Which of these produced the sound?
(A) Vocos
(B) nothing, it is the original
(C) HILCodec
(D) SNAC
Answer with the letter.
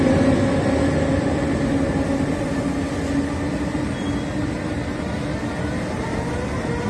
B